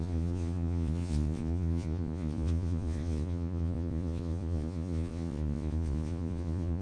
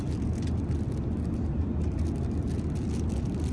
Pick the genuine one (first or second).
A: second